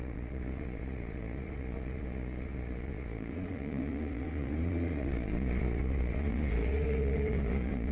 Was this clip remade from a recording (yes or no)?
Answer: yes